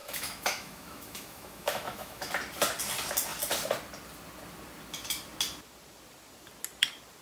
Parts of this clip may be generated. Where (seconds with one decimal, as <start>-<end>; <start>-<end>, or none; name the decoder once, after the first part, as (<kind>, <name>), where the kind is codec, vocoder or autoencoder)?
0.0-2.3 (autoencoder, DAC-VAE)